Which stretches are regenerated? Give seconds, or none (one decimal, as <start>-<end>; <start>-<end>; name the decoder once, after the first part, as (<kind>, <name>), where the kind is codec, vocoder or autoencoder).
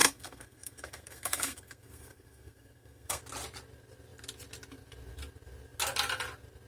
0.0-3.2 (codec, SNAC)